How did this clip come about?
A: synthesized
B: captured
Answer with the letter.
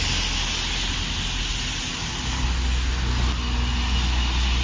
B